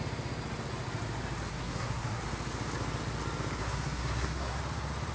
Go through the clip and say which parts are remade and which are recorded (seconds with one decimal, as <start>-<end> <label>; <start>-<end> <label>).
0.0-1.5 recorded; 1.5-2.2 remade; 2.2-3.6 recorded; 3.6-4.6 remade; 4.6-5.1 recorded